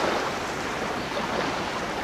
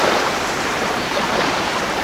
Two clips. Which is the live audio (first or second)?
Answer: first